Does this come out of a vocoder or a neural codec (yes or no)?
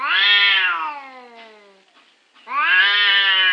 no